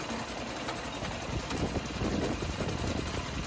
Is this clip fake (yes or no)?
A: no